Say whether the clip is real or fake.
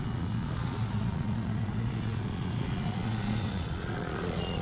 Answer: fake